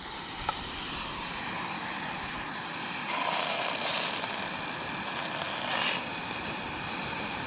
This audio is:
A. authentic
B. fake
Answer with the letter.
A